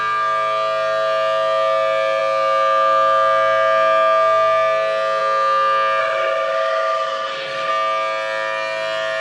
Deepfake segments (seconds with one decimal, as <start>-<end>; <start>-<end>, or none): 6.0-7.7